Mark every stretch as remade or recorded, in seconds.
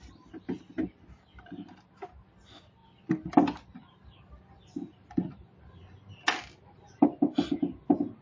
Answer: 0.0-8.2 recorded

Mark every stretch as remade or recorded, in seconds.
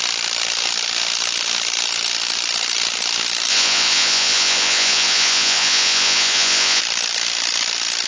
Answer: 0.0-3.5 recorded; 3.5-6.8 remade; 6.8-8.1 recorded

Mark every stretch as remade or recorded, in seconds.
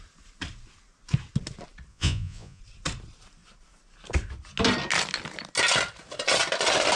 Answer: 0.0-1.9 recorded; 1.9-2.6 remade; 2.6-7.0 recorded